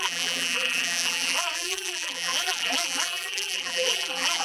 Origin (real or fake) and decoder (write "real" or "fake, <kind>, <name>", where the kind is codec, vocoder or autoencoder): fake, vocoder, BigVGAN v2